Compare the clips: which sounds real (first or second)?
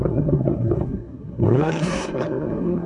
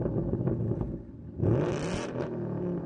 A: second